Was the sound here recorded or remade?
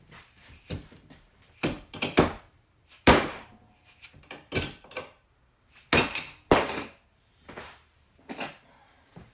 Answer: remade